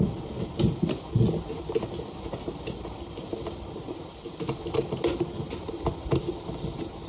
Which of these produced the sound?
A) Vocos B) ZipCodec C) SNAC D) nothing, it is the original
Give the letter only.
D